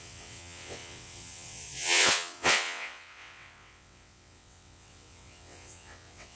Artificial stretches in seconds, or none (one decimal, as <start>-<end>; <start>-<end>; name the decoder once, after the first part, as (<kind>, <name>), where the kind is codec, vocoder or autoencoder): 0.0-6.4 (vocoder, WaveNeXt)